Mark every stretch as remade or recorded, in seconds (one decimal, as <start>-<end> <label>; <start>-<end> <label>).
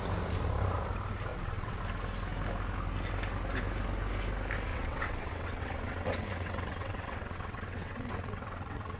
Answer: 0.0-1.3 recorded; 1.3-1.8 remade; 1.8-4.7 recorded; 4.7-9.0 remade